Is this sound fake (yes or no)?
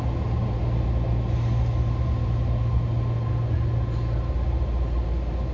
no